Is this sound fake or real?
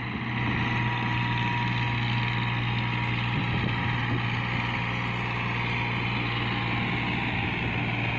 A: real